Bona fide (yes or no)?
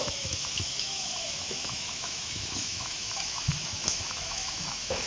no